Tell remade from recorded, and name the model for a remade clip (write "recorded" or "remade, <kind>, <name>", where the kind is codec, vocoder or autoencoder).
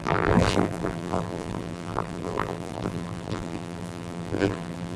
remade, vocoder, BigVGAN v2